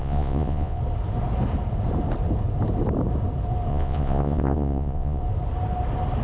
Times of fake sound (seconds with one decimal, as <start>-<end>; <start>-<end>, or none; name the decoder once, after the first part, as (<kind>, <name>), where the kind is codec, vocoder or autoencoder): 0.0-0.8 (vocoder, Vocos); 3.7-5.2